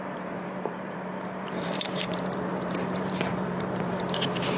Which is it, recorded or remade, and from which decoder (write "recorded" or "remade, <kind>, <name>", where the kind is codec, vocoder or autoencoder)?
remade, vocoder, BigVGAN v2